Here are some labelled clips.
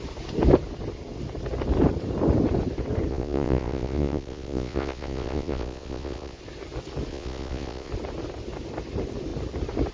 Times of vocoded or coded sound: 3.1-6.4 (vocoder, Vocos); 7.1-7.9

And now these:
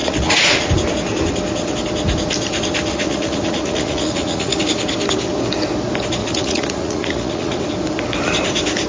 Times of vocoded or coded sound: 0.0-0.7 (vocoder, Vocos); 2.9-4.6; 6.2-7.6